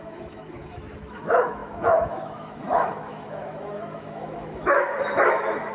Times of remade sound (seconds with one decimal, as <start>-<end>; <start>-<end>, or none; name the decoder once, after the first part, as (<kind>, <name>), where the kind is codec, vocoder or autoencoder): 0.0-5.7 (autoencoder, DAC-VAE)